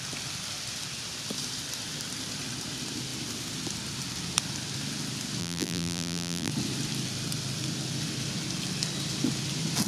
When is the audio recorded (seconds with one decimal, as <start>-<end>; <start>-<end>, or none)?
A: 0.0-5.4; 6.5-9.9

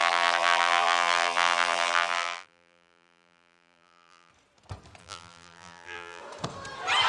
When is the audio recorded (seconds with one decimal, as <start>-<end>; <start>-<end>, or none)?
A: 4.3-5.0; 6.2-7.1

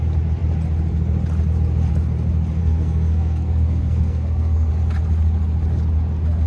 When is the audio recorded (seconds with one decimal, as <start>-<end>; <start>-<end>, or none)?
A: 0.0-2.6; 4.7-6.5

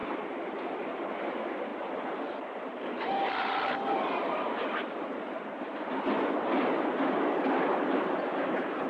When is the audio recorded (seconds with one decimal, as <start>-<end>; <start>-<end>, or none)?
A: 0.6-1.7; 2.8-8.9

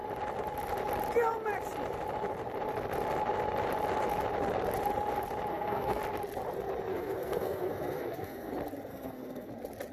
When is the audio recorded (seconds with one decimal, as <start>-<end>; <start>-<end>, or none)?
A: 0.0-5.5; 6.0-6.9; 8.5-8.9; 9.5-9.9

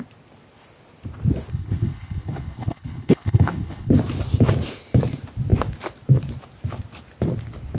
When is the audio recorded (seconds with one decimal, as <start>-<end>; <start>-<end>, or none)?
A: 0.0-1.5; 3.9-7.8

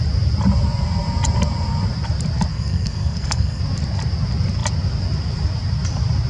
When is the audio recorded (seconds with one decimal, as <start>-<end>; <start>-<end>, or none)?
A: 0.0-2.5; 3.6-6.3

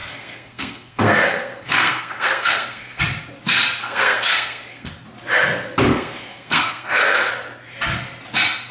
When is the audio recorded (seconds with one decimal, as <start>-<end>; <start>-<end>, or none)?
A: 3.0-3.8; 4.9-5.9; 7.3-8.7